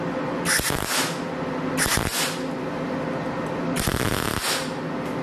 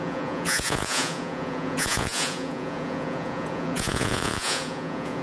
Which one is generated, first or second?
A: second